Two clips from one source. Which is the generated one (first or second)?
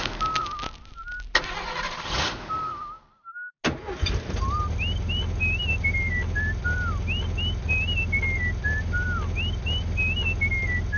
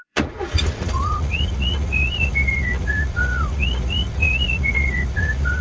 second